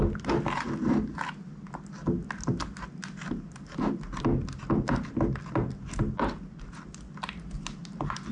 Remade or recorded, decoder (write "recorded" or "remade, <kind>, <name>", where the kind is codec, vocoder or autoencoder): recorded